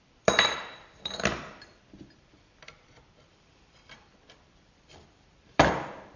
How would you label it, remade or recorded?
remade